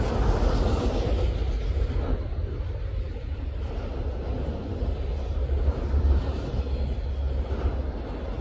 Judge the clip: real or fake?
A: real